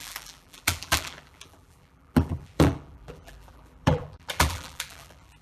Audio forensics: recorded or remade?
remade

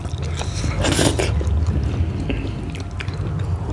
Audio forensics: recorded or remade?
recorded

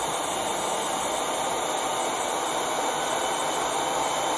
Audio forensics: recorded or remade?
recorded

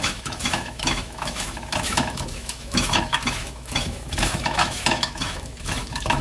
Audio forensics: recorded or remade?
remade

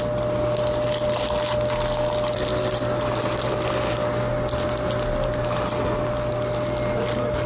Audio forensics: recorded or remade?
recorded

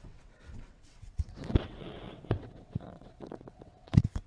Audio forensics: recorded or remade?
remade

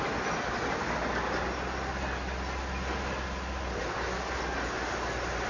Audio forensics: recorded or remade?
recorded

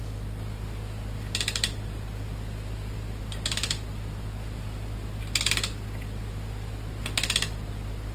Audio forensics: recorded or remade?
recorded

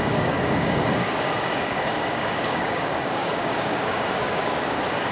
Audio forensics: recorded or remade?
remade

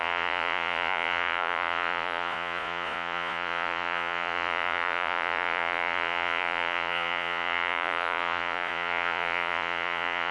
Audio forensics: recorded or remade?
remade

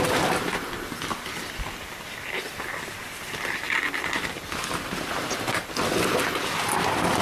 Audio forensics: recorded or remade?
recorded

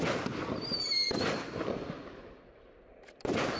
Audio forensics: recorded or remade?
recorded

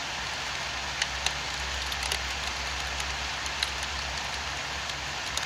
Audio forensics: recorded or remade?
recorded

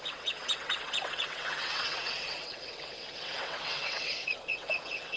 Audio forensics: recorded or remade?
remade